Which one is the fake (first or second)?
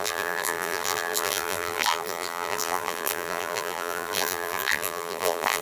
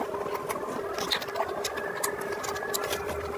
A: first